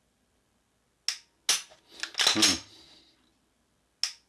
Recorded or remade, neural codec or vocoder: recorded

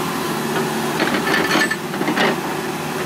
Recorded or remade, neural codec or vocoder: recorded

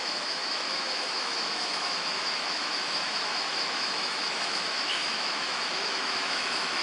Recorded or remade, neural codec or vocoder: remade, autoencoder, DAC-VAE